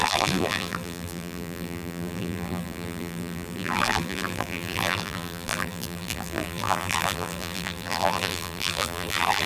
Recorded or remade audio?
remade